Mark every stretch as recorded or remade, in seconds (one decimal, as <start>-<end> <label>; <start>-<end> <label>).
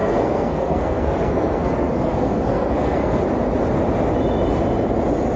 0.0-3.2 remade; 3.2-5.4 recorded